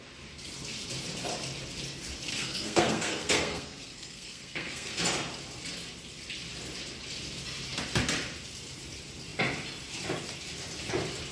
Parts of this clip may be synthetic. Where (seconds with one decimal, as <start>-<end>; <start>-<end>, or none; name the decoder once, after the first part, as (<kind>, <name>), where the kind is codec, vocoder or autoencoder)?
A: 2.3-5.0 (codec, SNAC)